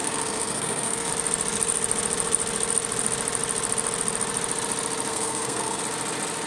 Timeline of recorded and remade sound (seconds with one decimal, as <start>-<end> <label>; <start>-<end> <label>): 0.0-1.1 remade; 1.1-5.1 recorded; 5.1-5.8 remade; 5.8-6.5 recorded